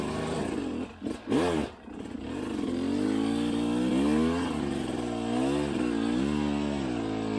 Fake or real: real